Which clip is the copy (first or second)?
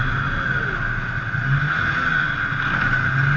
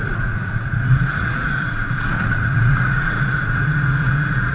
second